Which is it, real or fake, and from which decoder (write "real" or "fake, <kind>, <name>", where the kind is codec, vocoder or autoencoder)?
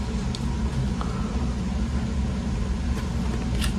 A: real